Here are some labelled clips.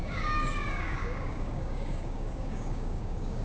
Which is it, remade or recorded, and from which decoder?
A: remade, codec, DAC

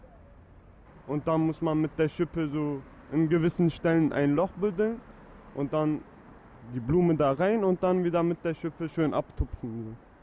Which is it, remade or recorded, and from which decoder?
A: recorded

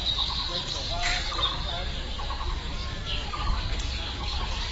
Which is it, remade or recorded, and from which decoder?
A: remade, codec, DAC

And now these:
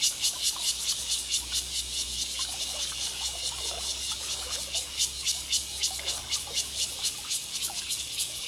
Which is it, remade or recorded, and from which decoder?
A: remade, codec, DAC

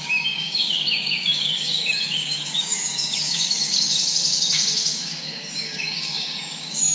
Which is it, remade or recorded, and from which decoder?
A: remade, codec, DAC